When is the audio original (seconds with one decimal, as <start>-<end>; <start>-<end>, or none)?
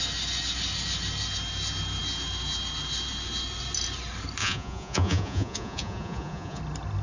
0.0-4.4; 6.6-7.0